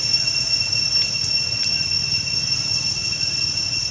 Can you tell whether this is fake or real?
real